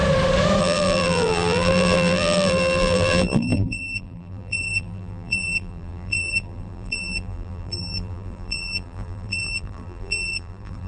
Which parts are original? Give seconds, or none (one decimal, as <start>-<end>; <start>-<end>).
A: 0.0-0.6